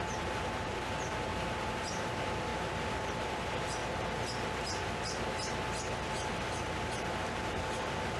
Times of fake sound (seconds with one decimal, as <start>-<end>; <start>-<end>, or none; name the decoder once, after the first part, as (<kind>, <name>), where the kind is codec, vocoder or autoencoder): 0.0-1.3 (vocoder, BigVGAN v2); 1.8-3.8; 5.9-8.2